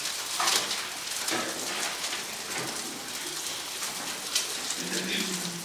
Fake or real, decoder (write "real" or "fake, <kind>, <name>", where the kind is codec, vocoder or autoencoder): real